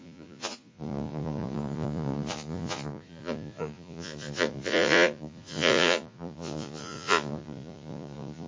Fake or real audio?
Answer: fake